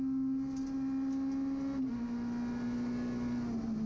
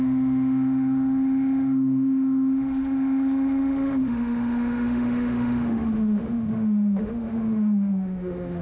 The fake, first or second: second